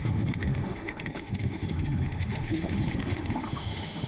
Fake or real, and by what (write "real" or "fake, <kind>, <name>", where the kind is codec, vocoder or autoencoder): fake, autoencoder, DAC-VAE